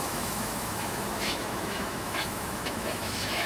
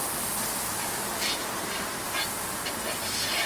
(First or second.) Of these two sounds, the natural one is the second